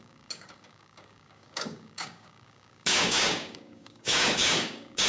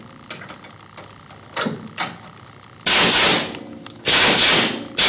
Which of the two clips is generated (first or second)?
first